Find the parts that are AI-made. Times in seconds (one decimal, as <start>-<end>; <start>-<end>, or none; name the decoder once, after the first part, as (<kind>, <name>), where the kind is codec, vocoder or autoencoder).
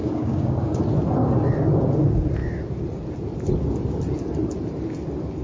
0.0-0.8 (codec, DAC)